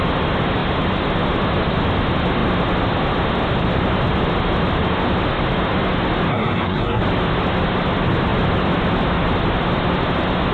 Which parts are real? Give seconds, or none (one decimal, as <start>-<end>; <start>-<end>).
0.0-6.3; 7.0-10.5